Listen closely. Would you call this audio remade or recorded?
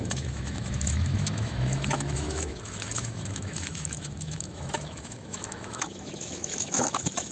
remade